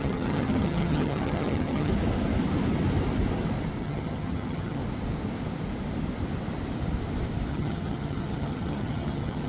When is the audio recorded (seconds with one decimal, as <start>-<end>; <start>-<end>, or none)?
1.9-3.8; 4.8-7.5